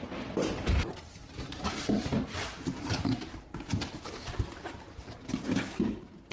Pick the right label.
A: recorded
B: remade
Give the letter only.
B